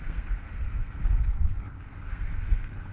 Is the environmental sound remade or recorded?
remade